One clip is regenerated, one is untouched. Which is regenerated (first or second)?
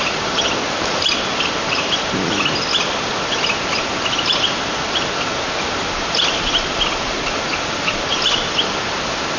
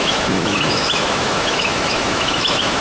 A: second